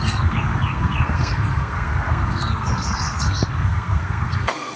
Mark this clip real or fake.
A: fake